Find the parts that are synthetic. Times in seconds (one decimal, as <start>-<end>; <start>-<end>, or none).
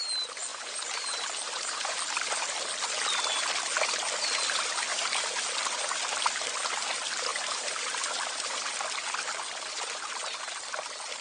0.5-2.1; 4.9-5.4; 7.3-8.7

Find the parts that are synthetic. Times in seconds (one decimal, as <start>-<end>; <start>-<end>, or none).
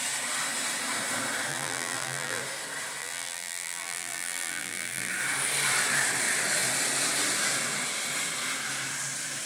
1.5-2.4; 3.0-5.1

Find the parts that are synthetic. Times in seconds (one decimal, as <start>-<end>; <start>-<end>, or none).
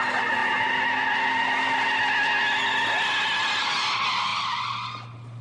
none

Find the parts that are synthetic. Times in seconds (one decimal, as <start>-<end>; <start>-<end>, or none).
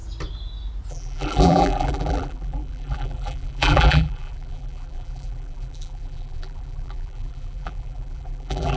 0.9-8.8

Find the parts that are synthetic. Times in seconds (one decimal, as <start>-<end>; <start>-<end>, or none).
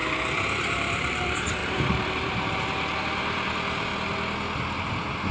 0.6-3.9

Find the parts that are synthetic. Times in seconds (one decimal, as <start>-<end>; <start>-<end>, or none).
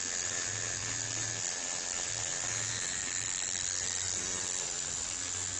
0.8-1.5; 3.0-5.0